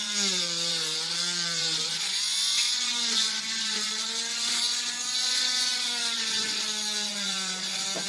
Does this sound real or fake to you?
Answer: fake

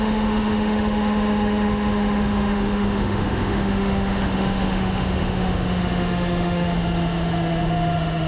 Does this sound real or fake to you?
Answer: fake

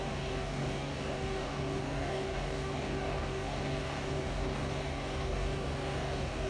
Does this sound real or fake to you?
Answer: fake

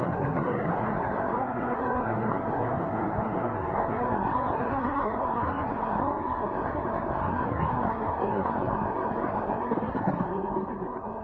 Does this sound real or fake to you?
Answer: fake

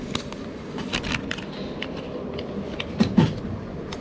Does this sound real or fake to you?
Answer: real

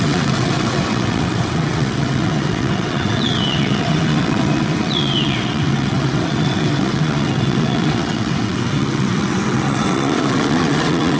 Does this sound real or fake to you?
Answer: fake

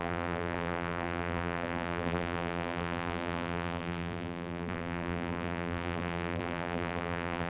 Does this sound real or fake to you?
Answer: fake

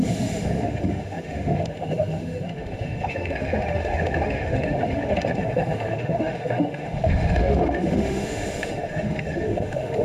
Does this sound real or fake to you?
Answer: fake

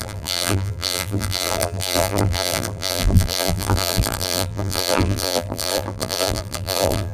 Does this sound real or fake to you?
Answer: fake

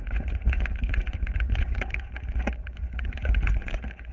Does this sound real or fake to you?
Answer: fake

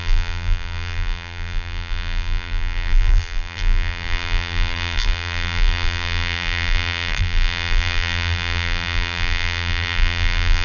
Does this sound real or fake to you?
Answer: fake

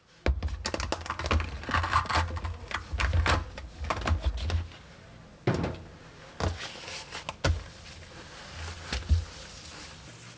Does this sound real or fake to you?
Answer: real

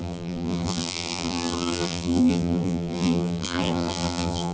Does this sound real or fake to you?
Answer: fake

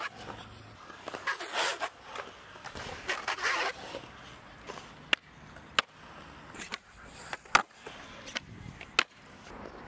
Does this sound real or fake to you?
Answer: real